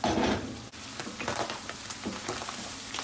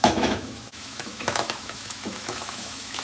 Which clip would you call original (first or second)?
first